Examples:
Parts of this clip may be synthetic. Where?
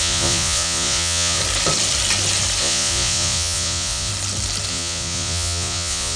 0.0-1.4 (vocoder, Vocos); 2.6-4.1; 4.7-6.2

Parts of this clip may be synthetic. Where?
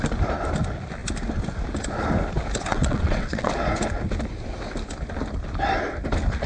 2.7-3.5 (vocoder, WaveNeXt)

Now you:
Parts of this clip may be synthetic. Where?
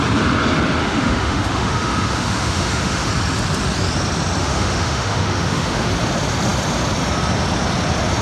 0.8-3.1 (autoencoder, DAC-VAE); 4.4-5.9